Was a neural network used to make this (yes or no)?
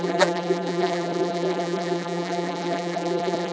yes